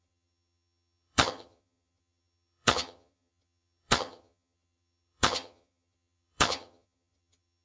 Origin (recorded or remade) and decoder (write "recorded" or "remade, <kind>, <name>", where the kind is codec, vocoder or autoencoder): remade, vocoder, HiFi-GAN